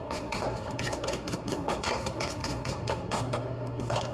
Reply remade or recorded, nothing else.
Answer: remade